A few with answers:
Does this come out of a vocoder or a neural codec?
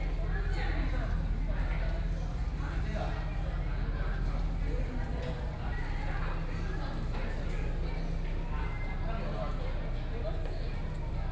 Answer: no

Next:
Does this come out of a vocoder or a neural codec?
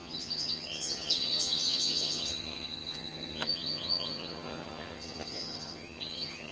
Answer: yes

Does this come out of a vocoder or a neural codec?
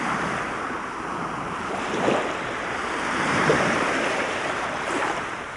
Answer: yes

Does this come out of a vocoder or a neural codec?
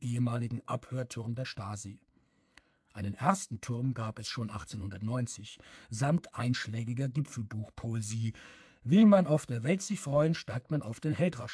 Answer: yes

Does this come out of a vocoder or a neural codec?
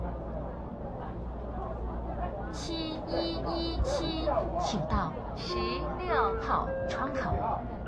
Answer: no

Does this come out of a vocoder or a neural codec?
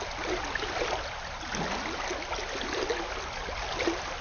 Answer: no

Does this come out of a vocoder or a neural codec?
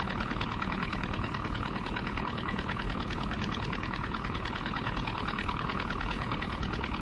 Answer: yes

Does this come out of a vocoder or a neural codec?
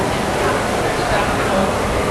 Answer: no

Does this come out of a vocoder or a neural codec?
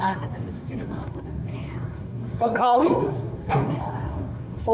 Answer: yes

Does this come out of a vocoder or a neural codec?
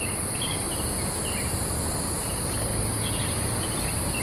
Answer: no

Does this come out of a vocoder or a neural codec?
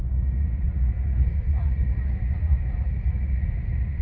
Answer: yes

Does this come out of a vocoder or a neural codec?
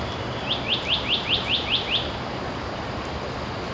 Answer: no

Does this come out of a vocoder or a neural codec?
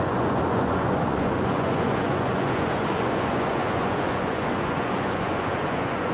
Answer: yes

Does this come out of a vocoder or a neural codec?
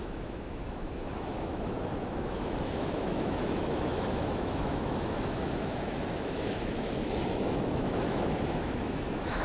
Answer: yes